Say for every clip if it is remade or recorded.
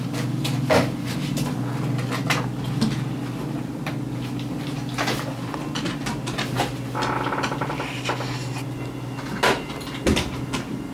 recorded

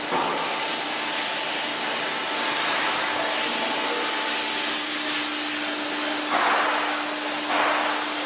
recorded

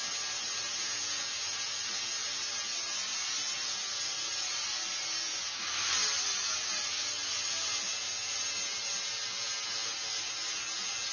recorded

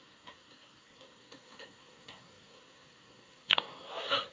remade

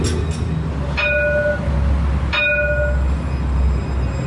recorded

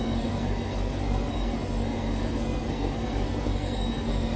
remade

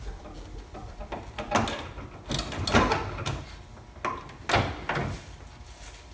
recorded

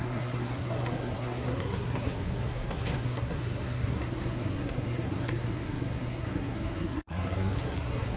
remade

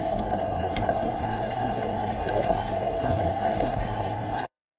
remade